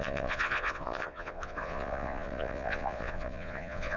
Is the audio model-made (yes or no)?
yes